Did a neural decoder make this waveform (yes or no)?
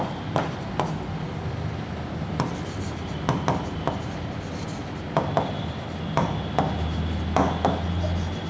no